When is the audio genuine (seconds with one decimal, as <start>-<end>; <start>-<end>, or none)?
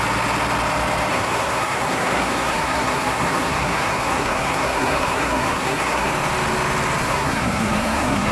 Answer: 0.0-1.1; 6.1-7.0